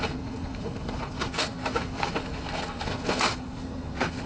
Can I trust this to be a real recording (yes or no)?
no